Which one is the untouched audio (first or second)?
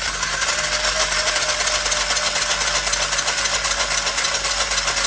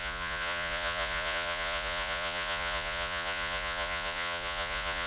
first